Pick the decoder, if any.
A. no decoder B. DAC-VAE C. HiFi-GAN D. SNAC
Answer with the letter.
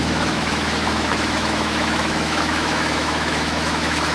B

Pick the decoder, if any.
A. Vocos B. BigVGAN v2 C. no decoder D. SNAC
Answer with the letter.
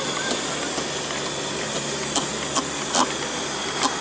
C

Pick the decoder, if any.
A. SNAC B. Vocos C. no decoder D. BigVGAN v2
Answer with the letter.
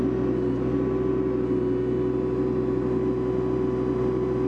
C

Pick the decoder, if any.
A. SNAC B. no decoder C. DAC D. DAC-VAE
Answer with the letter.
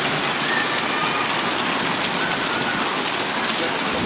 B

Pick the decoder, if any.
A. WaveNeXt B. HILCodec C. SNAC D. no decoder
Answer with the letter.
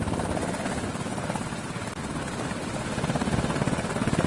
D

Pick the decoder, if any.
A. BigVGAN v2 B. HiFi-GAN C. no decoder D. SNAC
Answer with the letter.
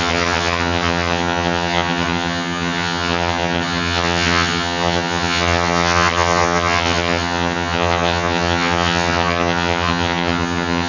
B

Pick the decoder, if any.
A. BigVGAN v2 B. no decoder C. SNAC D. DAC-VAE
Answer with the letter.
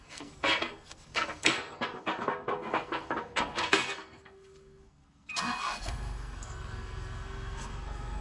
C